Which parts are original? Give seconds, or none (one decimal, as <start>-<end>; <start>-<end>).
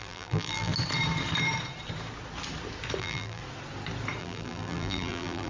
0.7-3.0; 3.4-4.2